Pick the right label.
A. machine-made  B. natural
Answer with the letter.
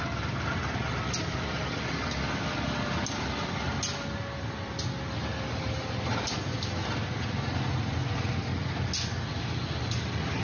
B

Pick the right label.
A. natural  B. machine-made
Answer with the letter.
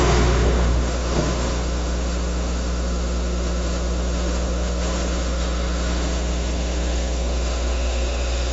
B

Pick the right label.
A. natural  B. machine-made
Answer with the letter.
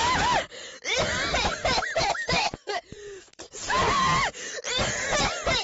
A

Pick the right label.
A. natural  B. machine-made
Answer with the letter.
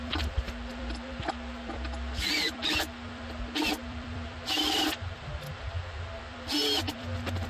B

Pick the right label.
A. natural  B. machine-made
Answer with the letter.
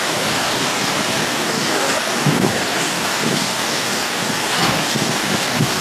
B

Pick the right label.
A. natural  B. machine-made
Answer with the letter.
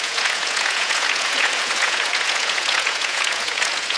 B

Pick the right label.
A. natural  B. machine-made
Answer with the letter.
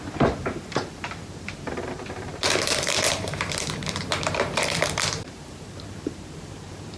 B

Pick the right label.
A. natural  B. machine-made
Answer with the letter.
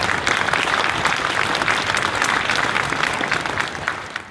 A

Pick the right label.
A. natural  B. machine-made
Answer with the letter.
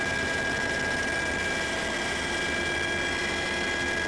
A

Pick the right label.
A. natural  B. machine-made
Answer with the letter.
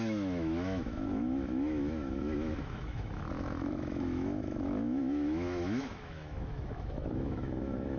B